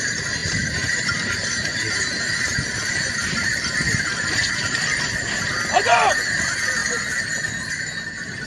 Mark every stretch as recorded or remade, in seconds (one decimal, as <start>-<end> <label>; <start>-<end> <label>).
0.0-8.5 recorded

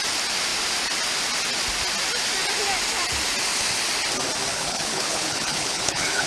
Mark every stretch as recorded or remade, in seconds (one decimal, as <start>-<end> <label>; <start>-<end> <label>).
0.0-4.5 recorded; 4.5-6.3 remade

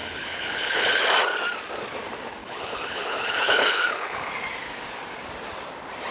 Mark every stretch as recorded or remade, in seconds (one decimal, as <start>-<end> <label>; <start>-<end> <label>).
0.0-0.9 remade; 0.9-2.4 recorded; 2.4-4.3 remade; 4.3-6.1 recorded

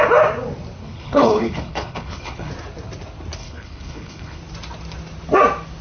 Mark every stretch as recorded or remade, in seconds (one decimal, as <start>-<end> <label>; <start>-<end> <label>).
0.0-0.8 recorded; 0.8-2.5 remade; 2.5-3.4 recorded; 3.4-4.4 remade; 4.4-5.8 recorded

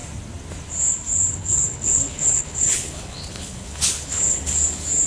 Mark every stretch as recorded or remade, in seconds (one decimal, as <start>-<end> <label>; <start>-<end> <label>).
0.0-1.3 recorded; 1.3-4.4 remade; 4.4-5.1 recorded

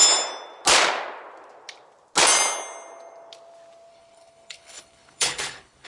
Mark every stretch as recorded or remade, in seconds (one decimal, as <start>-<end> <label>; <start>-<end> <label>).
0.0-3.9 recorded; 3.9-5.9 remade